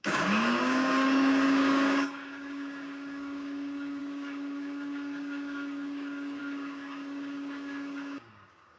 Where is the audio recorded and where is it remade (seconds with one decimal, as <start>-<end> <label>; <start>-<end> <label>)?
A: 0.0-8.8 remade

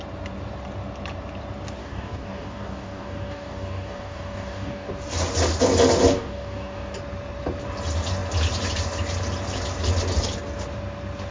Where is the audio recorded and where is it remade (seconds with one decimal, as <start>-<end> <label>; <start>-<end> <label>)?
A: 0.0-1.8 recorded; 1.8-4.9 remade; 4.9-6.1 recorded; 6.1-6.9 remade; 6.9-11.3 recorded

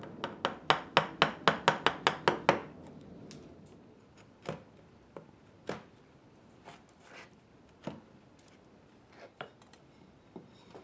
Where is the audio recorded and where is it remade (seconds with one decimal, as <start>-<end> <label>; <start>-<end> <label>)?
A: 0.0-10.8 recorded

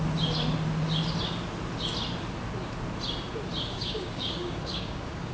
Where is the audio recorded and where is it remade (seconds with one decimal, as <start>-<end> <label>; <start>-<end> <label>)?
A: 0.0-3.7 recorded; 3.7-5.3 remade

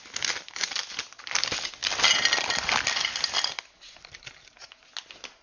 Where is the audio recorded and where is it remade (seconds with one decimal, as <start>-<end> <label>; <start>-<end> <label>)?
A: 0.0-5.4 recorded

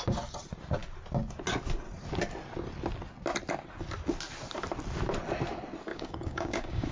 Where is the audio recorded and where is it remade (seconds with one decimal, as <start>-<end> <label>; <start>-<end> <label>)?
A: 0.0-5.9 recorded; 5.9-6.9 remade